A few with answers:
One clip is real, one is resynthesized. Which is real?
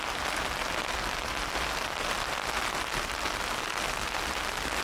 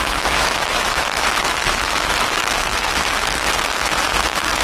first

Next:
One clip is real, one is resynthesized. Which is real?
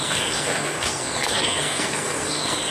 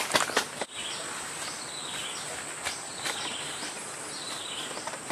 second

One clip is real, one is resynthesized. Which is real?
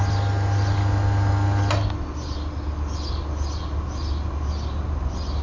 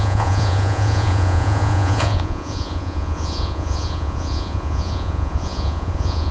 first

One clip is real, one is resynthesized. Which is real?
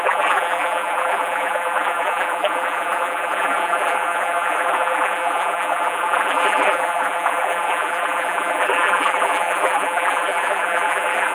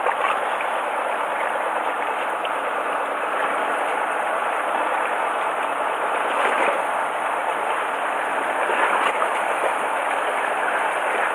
second